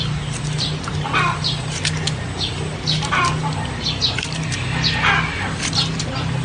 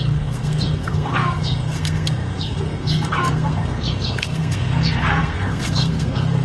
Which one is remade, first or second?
second